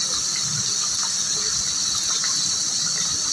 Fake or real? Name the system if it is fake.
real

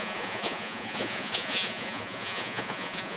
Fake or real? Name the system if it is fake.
fake, vocoder, Vocos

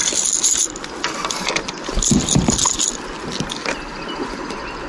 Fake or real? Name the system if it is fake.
real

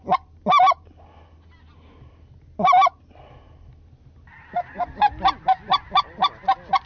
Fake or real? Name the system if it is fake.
real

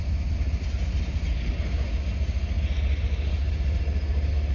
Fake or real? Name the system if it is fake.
real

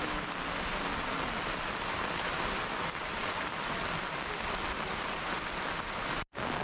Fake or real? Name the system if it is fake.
real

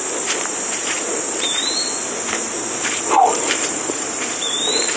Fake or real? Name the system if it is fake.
fake, vocoder, BigVGAN v2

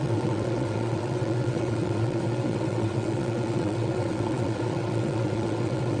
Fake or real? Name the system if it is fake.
fake, vocoder, WaveNeXt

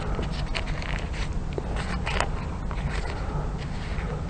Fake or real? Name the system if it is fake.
real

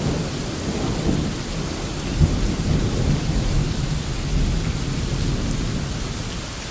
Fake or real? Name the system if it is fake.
real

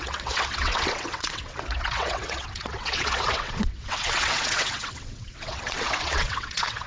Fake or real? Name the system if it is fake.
fake, vocoder, WaveNeXt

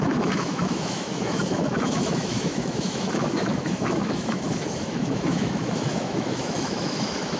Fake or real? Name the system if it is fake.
fake, autoencoder, DAC-VAE